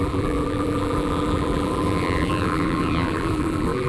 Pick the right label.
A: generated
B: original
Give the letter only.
A